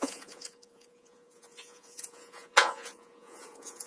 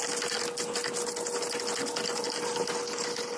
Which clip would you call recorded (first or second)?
second